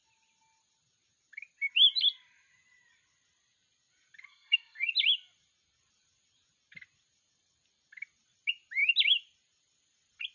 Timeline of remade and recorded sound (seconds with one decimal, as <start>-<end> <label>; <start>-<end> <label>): 0.0-4.3 recorded; 4.3-4.9 remade; 4.9-10.3 recorded